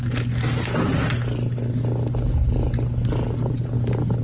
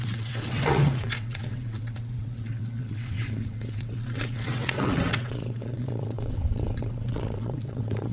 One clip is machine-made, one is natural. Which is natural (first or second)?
first